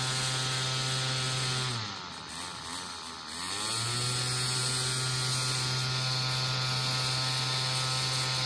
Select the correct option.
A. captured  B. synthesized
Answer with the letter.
A